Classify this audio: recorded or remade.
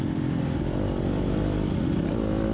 recorded